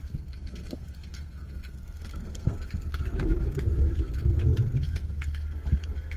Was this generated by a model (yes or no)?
yes